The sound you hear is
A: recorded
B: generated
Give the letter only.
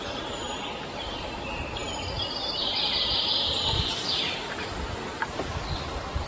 B